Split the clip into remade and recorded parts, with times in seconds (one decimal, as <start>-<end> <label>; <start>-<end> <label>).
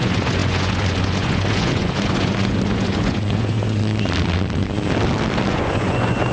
0.0-3.8 remade; 3.8-5.5 recorded; 5.5-6.3 remade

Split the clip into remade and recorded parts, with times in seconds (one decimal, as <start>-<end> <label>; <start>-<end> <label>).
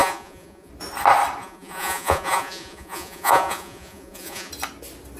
0.0-0.7 remade; 0.7-1.4 recorded; 1.4-4.5 remade; 4.5-5.2 recorded